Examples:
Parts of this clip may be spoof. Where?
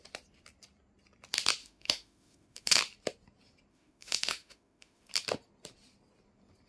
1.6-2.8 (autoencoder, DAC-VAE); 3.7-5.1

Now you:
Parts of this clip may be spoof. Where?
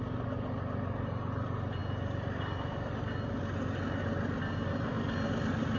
none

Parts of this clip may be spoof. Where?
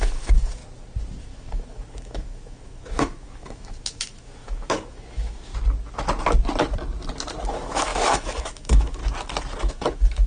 0.0-0.6 (autoencoder, DAC-VAE); 1.2-5.5; 7.5-9.0; 9.7-10.3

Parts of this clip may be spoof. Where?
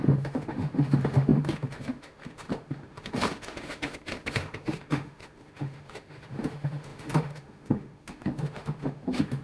0.0-9.4 (autoencoder, DAC-VAE)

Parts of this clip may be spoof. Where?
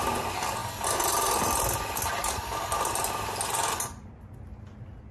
none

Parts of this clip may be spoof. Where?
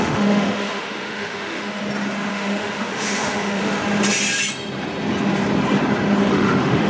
0.0-1.8 (autoencoder, DAC-VAE); 2.3-3.8; 6.3-6.9